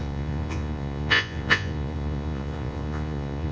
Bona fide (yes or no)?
no